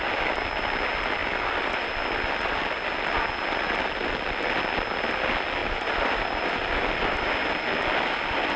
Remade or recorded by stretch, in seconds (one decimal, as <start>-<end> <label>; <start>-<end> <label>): 0.0-1.2 recorded; 1.2-2.6 remade; 2.6-5.6 recorded; 5.6-7.3 remade; 7.3-8.6 recorded